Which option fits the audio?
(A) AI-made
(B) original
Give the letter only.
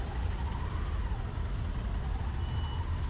B